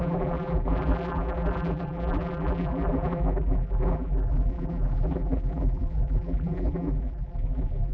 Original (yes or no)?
no